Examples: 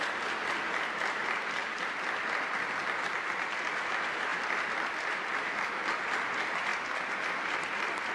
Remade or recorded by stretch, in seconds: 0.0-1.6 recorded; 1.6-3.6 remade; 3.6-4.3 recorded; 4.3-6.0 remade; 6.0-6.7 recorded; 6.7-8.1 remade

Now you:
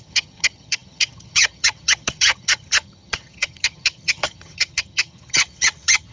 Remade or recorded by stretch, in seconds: 0.0-6.1 remade